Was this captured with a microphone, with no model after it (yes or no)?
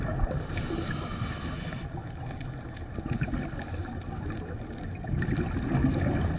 yes